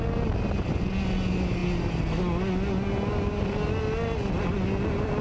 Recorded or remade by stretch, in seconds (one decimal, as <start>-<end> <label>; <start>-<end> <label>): 0.0-5.2 recorded

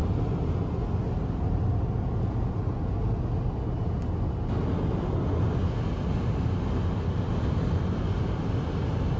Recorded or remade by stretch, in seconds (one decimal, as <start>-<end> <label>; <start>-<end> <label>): 0.0-9.2 recorded

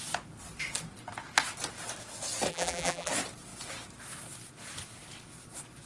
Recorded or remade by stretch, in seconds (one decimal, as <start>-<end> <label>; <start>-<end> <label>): 0.0-2.5 recorded; 2.5-3.1 remade; 3.1-5.9 recorded

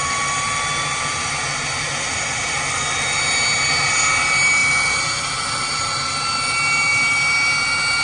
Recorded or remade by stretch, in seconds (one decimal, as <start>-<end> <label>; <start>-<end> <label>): 0.0-8.0 recorded

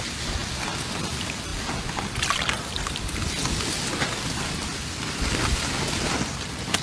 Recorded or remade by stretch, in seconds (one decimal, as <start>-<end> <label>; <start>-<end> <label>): 0.0-3.4 recorded; 3.4-5.4 remade; 5.4-6.8 recorded

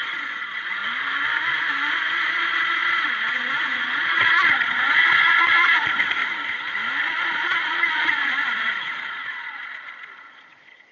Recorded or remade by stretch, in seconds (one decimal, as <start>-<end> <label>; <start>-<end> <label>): 0.0-0.8 remade; 0.8-1.9 recorded; 1.9-6.2 remade; 6.2-7.0 recorded; 7.0-10.9 remade

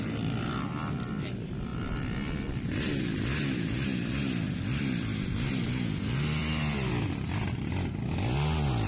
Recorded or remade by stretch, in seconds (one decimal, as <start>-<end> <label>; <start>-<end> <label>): 0.0-8.9 recorded